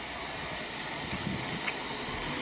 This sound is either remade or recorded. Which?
recorded